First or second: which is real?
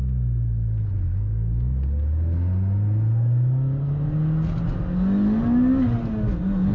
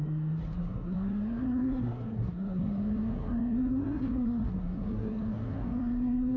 first